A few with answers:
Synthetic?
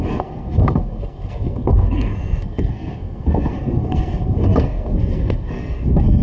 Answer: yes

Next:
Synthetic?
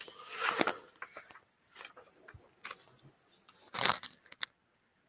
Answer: no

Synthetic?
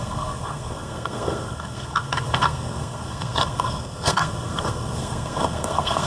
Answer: yes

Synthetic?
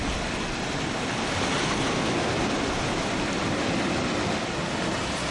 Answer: no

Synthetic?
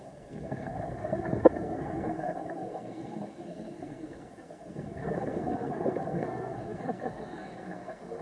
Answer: yes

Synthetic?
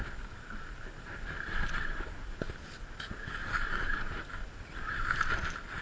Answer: no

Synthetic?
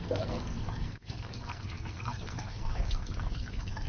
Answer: yes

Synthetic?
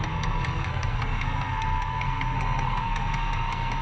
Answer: yes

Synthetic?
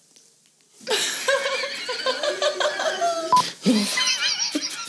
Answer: no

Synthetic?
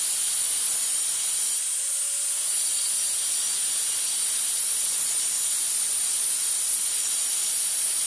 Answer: no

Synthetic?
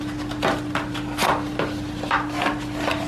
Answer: no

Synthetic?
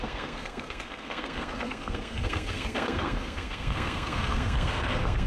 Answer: yes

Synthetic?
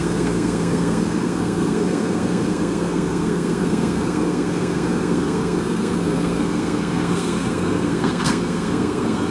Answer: yes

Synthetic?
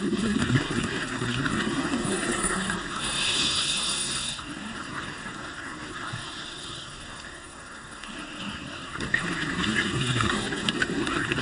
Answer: yes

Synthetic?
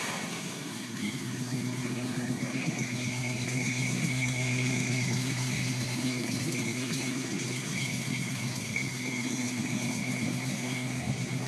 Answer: yes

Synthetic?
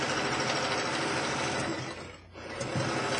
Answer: no